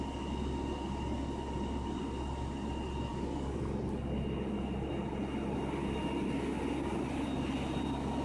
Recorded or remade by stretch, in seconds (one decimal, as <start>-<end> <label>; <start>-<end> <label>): 0.0-3.1 recorded; 3.1-3.6 remade; 3.6-8.2 recorded